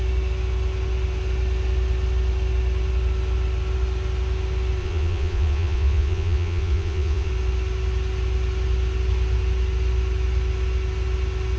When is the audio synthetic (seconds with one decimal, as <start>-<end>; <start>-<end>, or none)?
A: 4.8-7.3